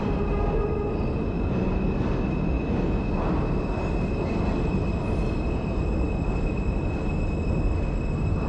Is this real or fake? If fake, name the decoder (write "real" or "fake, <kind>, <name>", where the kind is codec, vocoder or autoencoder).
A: real